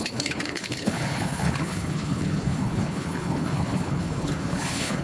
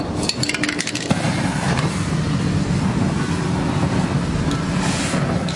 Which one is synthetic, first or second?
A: first